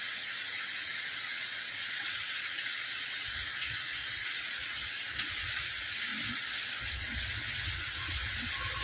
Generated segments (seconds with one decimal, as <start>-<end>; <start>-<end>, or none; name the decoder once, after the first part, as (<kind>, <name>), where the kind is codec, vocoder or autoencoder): 0.0-8.8 (vocoder, WaveNeXt)